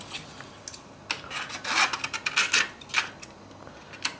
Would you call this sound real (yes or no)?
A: yes